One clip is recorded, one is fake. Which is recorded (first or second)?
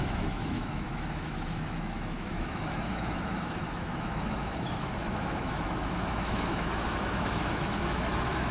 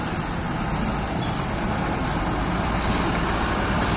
second